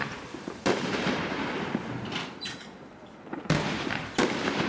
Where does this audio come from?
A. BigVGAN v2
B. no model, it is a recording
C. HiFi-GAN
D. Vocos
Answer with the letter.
A